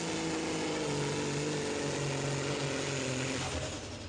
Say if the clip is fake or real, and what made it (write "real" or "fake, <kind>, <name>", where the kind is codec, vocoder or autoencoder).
real